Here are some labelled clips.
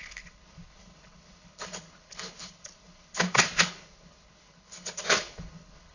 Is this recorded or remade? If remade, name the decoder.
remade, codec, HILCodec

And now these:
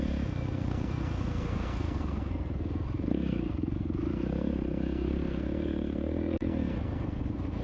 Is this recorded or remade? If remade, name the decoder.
remade, codec, SNAC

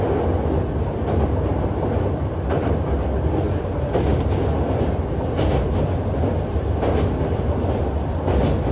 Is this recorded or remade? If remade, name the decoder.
recorded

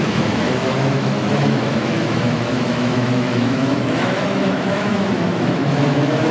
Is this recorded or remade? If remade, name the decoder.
remade, autoencoder, DAC-VAE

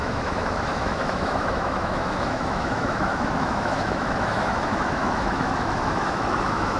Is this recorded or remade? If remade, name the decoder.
remade, autoencoder, DAC-VAE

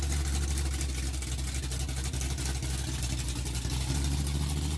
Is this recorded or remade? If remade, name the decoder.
recorded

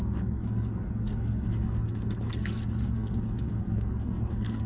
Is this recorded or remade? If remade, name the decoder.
remade, codec, SNAC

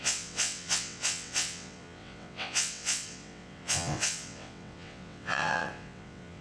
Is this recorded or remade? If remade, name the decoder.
remade, vocoder, WaveNeXt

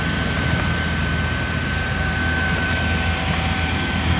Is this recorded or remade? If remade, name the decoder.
recorded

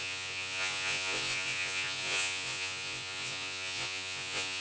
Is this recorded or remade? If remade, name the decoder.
remade, vocoder, Vocos